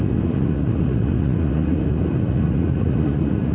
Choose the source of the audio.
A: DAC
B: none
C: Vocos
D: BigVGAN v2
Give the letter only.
C